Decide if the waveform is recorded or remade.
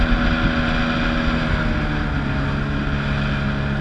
recorded